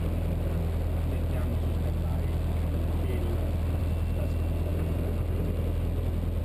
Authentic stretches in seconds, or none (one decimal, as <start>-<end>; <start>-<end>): 0.0-6.4